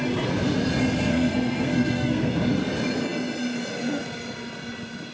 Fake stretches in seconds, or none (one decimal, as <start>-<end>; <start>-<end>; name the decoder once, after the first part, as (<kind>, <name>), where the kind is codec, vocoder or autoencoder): 1.1-2.4 (codec, SNAC)